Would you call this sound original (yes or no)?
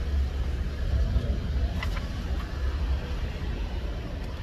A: yes